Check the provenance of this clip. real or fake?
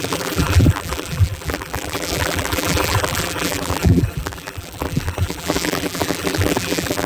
fake